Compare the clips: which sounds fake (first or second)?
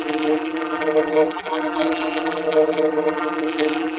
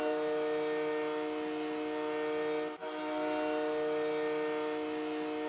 first